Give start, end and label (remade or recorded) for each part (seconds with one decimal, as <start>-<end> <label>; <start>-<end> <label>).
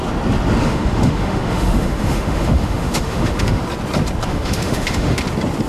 0.0-0.6 recorded; 0.6-3.6 remade; 3.6-4.3 recorded; 4.3-5.2 remade; 5.2-5.7 recorded